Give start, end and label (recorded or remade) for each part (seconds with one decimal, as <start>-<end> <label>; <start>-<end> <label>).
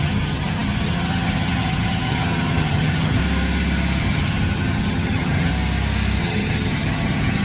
0.0-3.2 remade; 3.2-4.0 recorded; 4.0-5.5 remade; 5.5-6.2 recorded; 6.2-7.4 remade